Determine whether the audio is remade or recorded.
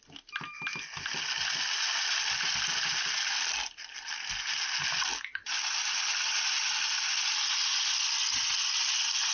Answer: recorded